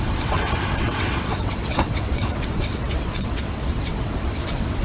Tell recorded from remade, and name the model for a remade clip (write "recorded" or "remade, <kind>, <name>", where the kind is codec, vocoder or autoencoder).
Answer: remade, vocoder, WaveNeXt